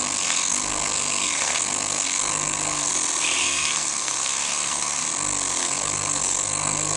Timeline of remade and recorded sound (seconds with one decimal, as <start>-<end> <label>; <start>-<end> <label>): 0.0-2.9 remade; 2.9-3.4 recorded; 3.4-5.0 remade; 5.0-5.6 recorded; 5.6-7.0 remade